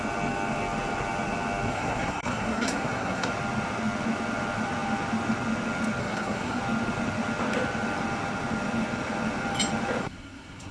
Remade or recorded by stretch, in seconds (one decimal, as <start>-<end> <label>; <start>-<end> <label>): 0.0-1.7 recorded; 1.7-3.3 remade; 3.3-6.0 recorded; 6.0-6.6 remade; 6.6-10.0 recorded; 10.0-10.7 remade